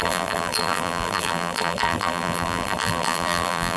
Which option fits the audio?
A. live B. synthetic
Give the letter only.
B